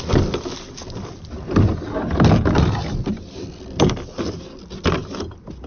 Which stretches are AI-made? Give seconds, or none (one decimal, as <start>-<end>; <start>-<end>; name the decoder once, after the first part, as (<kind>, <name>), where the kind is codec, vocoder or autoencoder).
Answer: none